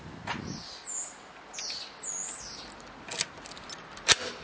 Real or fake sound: real